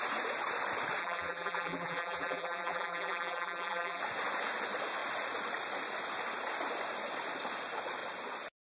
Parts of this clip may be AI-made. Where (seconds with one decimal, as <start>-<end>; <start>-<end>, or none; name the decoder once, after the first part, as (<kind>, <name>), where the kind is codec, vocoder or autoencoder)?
1.0-4.0 (vocoder, BigVGAN v2)